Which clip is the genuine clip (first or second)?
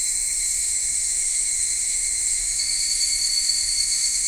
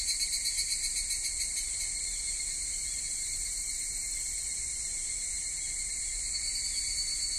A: second